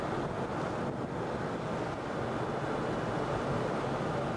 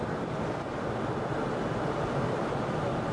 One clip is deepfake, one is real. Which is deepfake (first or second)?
second